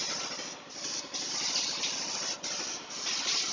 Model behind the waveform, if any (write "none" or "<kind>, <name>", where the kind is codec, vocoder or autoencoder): none